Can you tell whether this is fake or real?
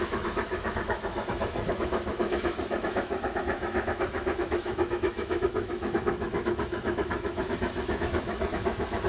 fake